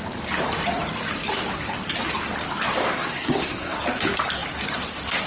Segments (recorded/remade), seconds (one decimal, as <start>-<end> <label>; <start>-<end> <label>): 0.0-2.8 recorded; 2.8-3.8 remade; 3.8-5.3 recorded